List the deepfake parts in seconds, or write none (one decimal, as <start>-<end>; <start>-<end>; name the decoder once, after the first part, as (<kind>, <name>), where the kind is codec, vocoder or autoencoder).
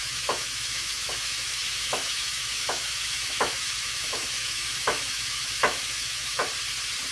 0.0-6.4 (autoencoder, DAC-VAE)